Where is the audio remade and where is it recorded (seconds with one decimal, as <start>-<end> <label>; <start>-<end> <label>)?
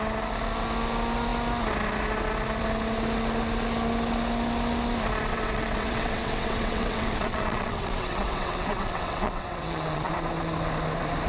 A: 0.0-5.3 recorded; 5.3-10.1 remade; 10.1-11.3 recorded